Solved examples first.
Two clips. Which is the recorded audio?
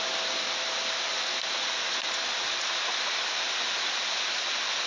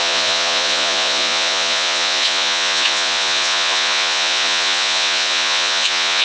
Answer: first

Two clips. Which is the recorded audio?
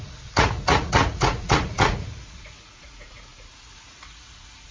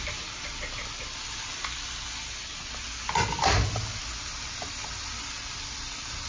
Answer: second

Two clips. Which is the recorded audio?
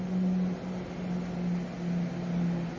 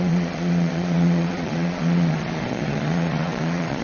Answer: first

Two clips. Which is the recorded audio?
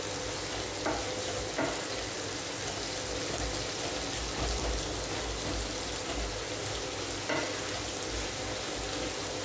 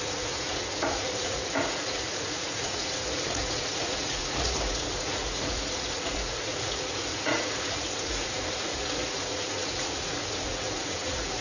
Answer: first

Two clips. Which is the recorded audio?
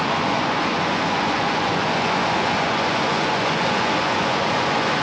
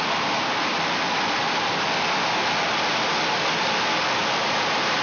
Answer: second